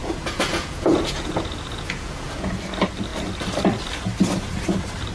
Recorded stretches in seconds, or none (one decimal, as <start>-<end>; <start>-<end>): 2.5-5.1